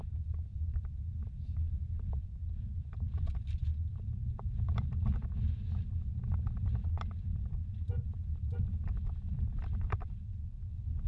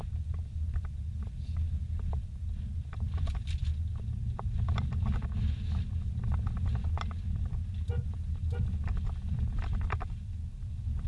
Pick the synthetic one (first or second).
first